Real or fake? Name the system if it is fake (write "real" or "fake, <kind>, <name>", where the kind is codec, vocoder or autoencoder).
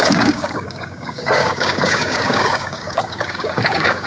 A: fake, codec, DAC